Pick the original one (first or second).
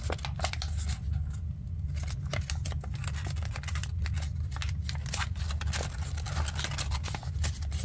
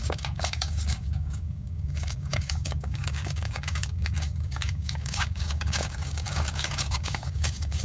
first